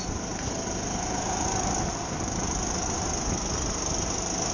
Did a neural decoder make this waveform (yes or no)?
no